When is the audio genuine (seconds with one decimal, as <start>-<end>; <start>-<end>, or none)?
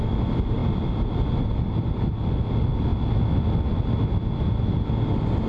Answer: 0.0-5.5